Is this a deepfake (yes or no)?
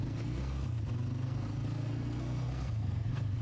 yes